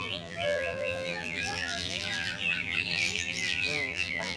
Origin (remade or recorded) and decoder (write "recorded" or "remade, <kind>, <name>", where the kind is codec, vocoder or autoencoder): remade, vocoder, BigVGAN v2